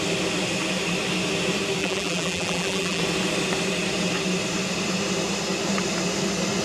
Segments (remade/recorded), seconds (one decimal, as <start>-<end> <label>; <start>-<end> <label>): 0.0-1.8 recorded; 1.8-3.0 remade; 3.0-6.6 recorded